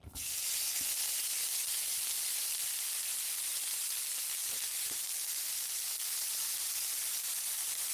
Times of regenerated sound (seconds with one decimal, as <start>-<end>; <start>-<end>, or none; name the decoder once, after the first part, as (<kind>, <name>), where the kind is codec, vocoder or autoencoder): none

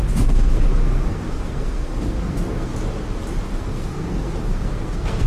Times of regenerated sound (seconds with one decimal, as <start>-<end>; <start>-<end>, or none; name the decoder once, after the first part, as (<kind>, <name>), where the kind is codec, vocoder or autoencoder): 0.0-2.7 (codec, SNAC); 3.5-5.3

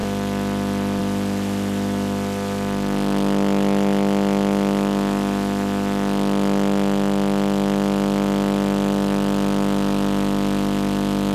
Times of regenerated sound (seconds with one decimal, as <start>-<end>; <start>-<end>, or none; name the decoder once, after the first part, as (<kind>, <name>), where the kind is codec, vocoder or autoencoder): none